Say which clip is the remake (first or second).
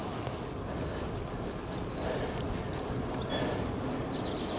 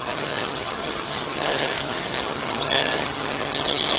second